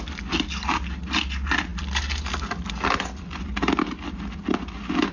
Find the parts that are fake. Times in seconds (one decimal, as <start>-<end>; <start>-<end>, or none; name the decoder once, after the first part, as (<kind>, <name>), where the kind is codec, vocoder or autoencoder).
none